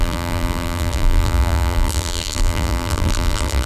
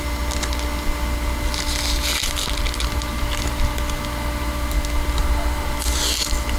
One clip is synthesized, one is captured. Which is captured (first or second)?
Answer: second